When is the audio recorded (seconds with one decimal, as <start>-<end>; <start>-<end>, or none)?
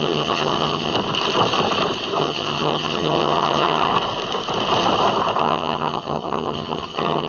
0.9-2.2; 3.9-5.4